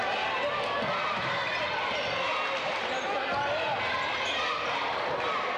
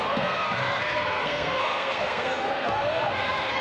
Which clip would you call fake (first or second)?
second